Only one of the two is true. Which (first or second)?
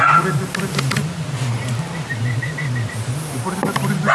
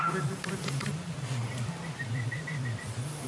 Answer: first